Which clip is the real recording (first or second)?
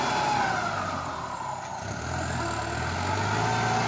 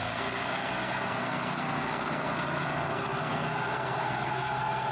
first